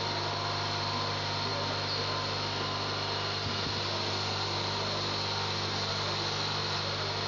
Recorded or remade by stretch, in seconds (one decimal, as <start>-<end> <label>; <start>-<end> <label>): 0.0-1.5 remade; 1.5-5.9 recorded; 5.9-7.3 remade

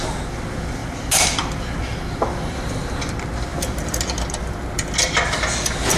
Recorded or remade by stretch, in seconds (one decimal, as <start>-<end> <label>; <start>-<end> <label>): 0.0-0.8 recorded; 0.8-3.1 remade; 3.1-6.0 recorded

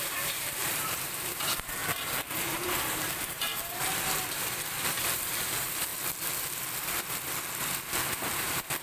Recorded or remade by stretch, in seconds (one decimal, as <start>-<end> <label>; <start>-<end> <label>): 0.0-5.9 remade; 5.9-7.8 recorded; 7.8-8.8 remade

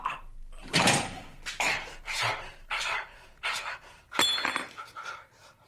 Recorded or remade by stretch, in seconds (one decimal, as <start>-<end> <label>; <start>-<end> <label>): 0.0-0.6 recorded; 0.6-4.0 remade; 4.0-5.7 recorded

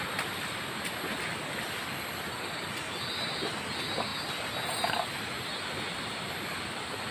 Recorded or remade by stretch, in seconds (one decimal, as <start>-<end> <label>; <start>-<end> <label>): 0.0-7.1 recorded

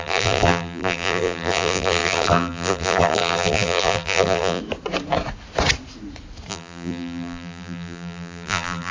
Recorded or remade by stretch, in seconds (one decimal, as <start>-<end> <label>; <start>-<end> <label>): 0.0-4.6 remade; 4.6-6.5 recorded; 6.5-8.9 remade

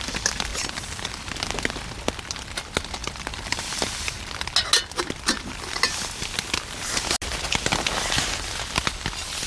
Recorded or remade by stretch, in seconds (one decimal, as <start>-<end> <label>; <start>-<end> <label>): 0.0-0.5 recorded; 0.5-1.3 remade; 1.3-3.0 recorded; 3.0-4.2 remade; 4.2-9.5 recorded

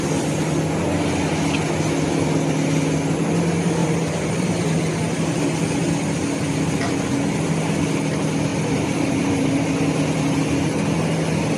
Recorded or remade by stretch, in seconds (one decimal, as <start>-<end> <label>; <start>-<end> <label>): 0.0-3.8 recorded; 3.8-4.8 remade; 4.8-8.5 recorded; 8.5-10.2 remade; 10.2-11.6 recorded